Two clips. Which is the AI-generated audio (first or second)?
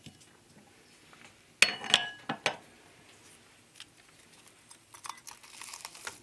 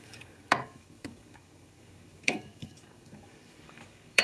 second